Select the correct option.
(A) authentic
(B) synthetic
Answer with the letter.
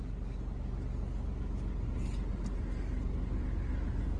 A